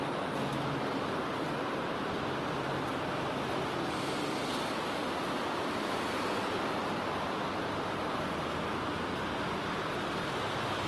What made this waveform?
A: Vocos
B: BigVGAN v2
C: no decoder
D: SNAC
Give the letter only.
C